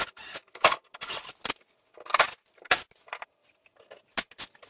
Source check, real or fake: real